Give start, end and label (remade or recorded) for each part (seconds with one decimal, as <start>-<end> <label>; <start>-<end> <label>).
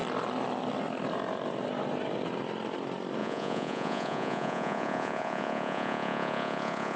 0.0-3.2 recorded; 3.2-7.0 remade